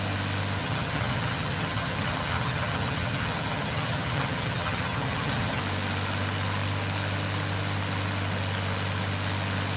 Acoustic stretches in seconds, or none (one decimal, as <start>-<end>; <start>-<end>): 0.0-0.6; 5.6-9.8